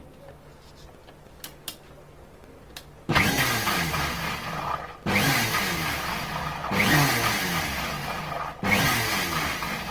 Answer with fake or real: real